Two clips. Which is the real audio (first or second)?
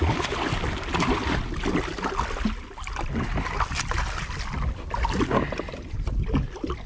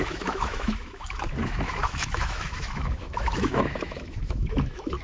first